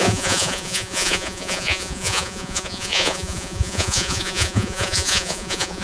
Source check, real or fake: fake